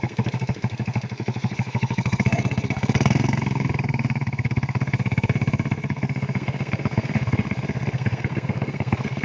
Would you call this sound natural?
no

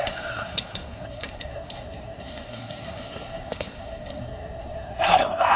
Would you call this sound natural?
no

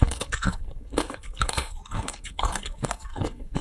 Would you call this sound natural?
no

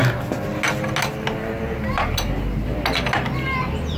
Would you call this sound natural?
yes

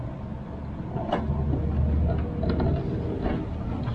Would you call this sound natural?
yes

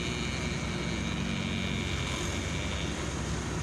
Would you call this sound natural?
yes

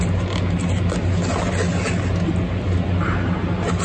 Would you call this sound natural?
yes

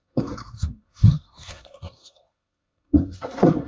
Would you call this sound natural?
no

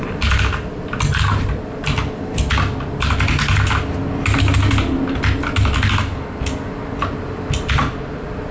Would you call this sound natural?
yes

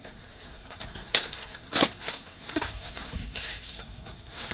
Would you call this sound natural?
no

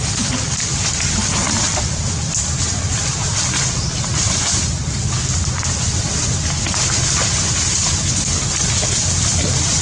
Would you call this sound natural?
yes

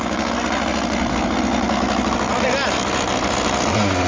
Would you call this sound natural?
yes